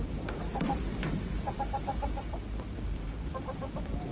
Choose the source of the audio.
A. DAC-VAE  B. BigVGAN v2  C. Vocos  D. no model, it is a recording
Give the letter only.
D